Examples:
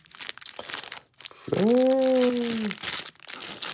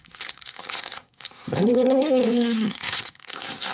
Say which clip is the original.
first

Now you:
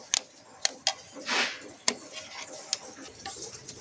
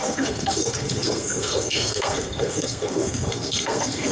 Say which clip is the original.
first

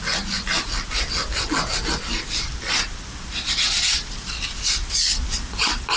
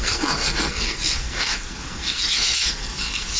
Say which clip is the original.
first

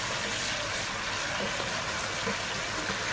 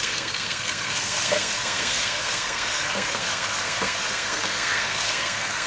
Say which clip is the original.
first